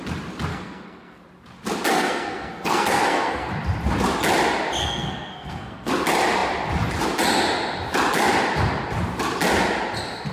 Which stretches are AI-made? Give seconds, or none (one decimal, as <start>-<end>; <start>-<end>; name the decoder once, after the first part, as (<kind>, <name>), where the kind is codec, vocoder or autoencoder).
0.5-1.2 (codec, SNAC); 1.9-3.5; 4.8-5.9